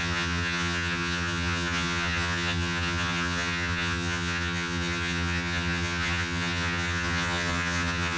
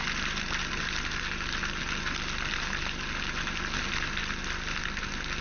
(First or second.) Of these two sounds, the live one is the second